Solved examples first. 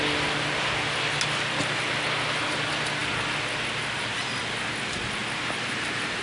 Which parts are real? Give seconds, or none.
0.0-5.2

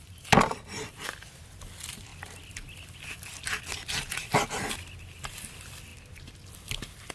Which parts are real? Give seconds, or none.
0.0-7.1

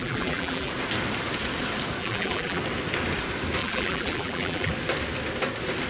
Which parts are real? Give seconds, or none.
0.7-2.0; 2.6-3.6; 4.7-5.9

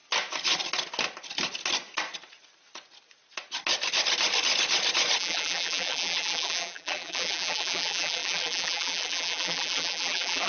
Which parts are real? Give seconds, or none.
0.0-5.2

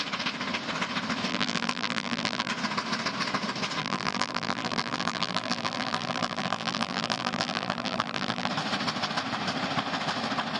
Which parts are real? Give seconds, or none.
0.0-1.3; 2.5-3.8; 8.5-10.6

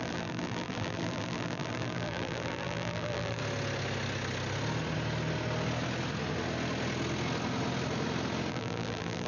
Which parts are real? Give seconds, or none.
3.4-8.5

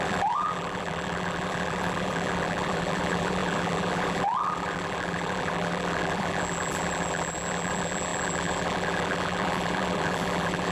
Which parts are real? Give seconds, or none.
none

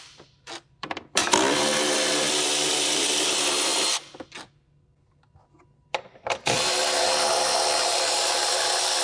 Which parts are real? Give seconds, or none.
1.2-2.2; 3.7-8.6